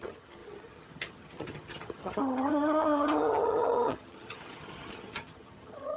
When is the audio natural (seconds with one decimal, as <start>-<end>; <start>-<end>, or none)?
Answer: none